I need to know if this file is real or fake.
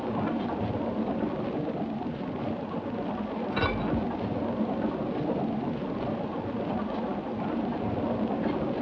real